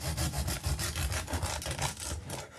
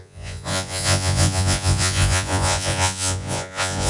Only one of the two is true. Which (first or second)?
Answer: first